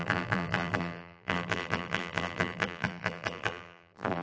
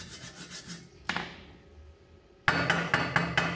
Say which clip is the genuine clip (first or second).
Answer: second